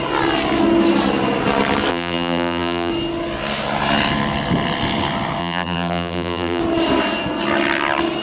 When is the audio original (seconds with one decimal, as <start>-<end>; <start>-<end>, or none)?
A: 0.0-1.9; 2.9-5.4; 6.6-8.2